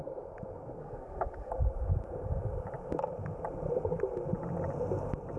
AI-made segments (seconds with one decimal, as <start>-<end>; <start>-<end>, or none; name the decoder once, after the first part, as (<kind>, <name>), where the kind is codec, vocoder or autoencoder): 0.8-1.5 (codec, SNAC)